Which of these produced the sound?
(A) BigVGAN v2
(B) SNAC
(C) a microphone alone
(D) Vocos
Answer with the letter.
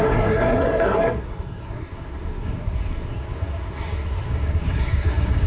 B